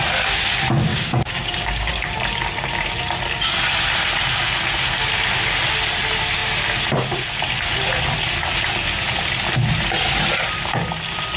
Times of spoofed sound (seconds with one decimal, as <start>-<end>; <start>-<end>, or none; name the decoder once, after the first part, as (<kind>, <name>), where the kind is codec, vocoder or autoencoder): 0.9-1.9 (codec, DAC)

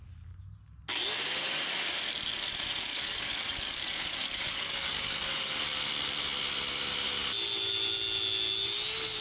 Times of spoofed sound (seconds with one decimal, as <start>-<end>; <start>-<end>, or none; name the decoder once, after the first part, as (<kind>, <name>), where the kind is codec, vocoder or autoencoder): 2.9-5.6 (codec, DAC)

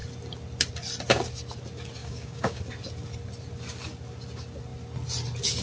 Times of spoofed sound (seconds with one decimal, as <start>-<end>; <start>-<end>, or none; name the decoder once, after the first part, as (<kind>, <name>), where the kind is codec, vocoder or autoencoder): 2.0-2.6 (codec, DAC)

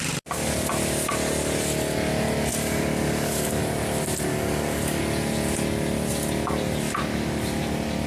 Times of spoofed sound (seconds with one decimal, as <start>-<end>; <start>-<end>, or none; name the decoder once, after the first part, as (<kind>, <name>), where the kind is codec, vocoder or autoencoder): 2.5-3.6 (codec, DAC); 4.3-5.0

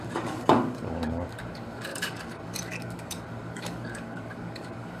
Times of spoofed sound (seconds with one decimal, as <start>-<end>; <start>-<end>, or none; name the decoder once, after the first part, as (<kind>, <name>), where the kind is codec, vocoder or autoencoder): 0.0-5.0 (codec, DAC)

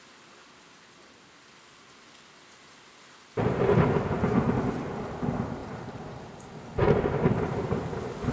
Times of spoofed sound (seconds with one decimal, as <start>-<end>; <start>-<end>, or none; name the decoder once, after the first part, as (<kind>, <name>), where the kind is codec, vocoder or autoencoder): none

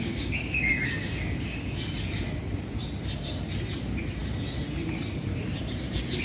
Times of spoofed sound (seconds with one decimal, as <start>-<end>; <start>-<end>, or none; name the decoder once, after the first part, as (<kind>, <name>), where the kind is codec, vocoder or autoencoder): 0.0-1.8 (codec, DAC)